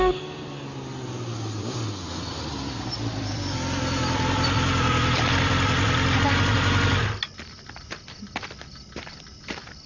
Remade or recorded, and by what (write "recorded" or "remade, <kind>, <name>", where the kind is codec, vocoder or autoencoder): recorded